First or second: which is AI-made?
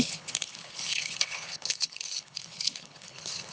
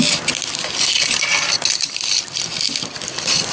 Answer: first